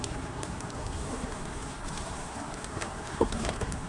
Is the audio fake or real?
fake